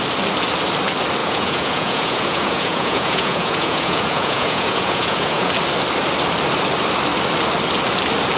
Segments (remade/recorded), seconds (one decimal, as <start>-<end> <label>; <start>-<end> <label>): 0.0-1.2 recorded; 1.2-5.5 remade; 5.5-8.4 recorded